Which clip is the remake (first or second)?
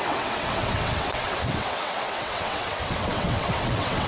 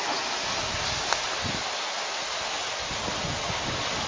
first